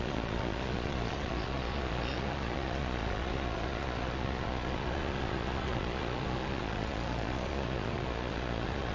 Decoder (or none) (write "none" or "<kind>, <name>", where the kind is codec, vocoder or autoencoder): vocoder, Vocos